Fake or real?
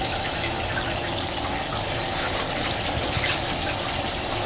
real